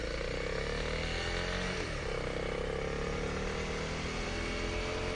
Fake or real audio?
real